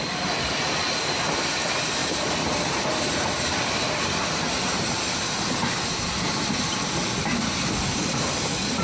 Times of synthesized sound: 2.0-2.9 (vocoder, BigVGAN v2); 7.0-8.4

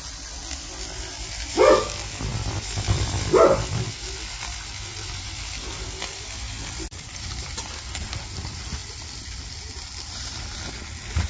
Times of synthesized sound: 2.3-3.8 (vocoder, BigVGAN v2); 4.9-7.6

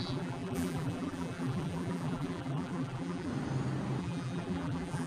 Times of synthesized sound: 0.0-3.3 (vocoder, BigVGAN v2); 4.0-5.1